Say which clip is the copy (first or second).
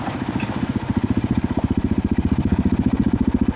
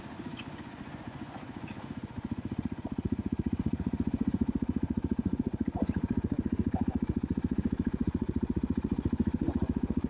second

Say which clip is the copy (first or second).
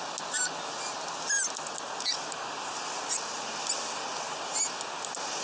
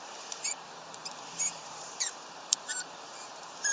second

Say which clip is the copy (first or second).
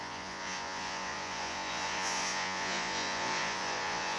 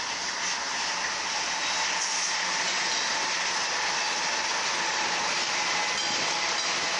first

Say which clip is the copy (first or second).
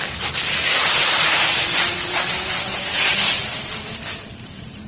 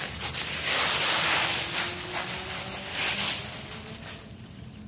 first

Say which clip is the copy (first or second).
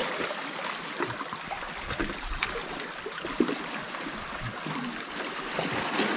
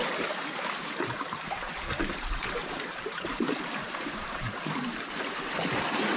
second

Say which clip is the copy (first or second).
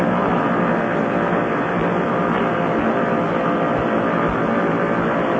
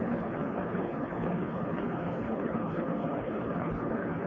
second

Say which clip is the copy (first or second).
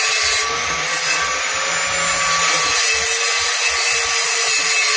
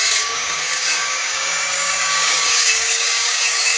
second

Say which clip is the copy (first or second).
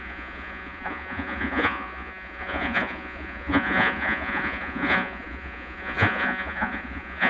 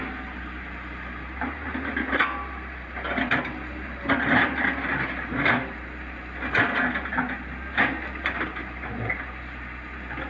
first